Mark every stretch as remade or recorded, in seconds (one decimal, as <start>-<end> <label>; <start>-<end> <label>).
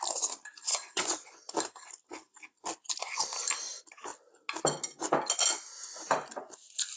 0.0-0.7 recorded; 0.7-1.5 remade; 1.5-7.0 recorded